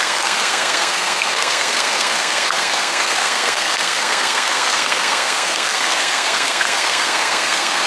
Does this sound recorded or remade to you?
remade